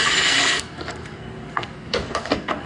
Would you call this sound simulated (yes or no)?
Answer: yes